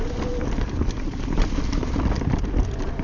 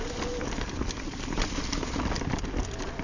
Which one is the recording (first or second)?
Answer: second